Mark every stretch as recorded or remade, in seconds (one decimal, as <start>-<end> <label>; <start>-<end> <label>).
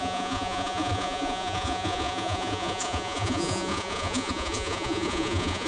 0.0-5.7 remade